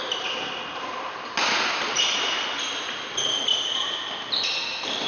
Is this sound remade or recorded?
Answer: recorded